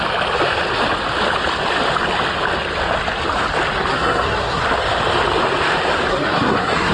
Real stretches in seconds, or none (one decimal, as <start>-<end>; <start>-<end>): 0.0-3.9; 4.6-6.1